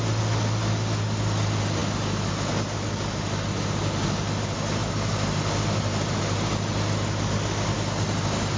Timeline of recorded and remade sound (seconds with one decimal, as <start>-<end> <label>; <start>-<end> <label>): 0.0-8.6 recorded